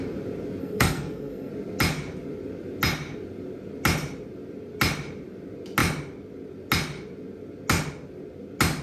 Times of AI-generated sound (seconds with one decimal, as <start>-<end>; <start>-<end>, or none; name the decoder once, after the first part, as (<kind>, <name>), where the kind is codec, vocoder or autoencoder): 0.6-1.5 (codec, SNAC)